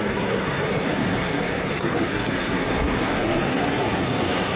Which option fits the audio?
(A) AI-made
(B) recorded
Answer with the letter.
A